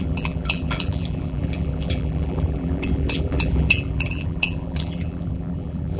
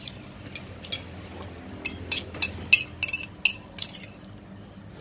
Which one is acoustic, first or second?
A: second